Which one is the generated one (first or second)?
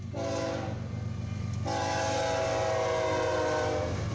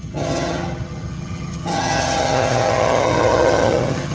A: second